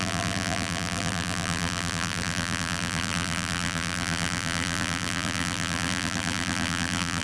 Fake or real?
fake